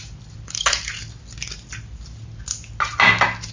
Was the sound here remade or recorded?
recorded